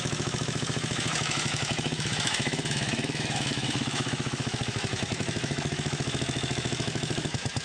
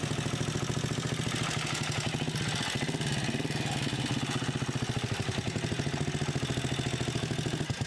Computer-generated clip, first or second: first